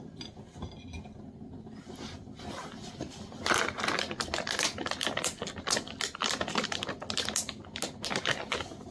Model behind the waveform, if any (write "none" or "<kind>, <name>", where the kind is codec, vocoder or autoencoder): none